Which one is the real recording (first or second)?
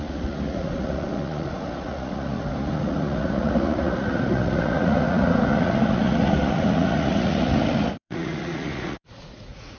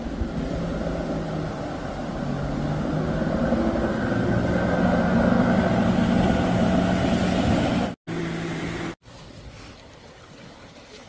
second